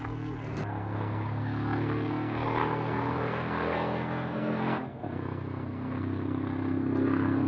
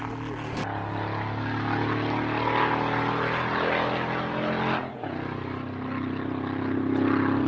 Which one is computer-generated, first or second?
first